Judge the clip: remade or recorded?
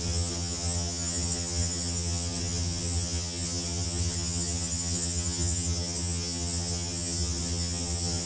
remade